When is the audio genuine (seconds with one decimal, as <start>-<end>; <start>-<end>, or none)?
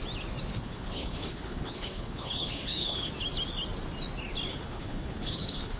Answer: 0.0-0.5; 3.1-4.5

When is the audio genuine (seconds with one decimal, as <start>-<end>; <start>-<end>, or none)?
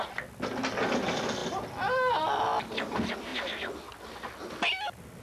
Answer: 0.0-5.2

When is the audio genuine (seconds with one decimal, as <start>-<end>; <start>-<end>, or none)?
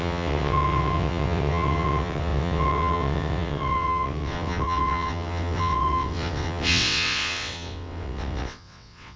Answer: none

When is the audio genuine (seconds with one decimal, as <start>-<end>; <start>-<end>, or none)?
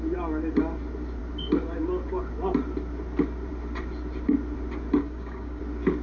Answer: 0.0-5.0; 5.6-6.0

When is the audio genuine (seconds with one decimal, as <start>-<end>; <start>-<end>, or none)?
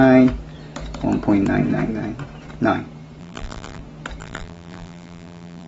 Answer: 0.0-3.2; 3.8-4.2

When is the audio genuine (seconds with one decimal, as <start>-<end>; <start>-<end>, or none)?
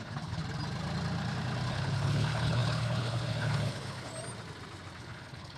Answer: 0.4-1.7; 4.1-5.0